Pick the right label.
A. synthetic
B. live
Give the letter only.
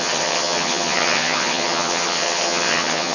A